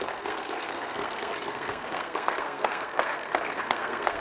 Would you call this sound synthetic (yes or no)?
yes